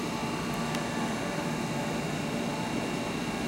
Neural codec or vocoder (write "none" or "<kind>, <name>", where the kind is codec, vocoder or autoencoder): none